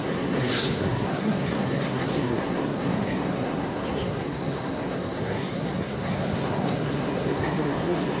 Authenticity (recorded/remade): remade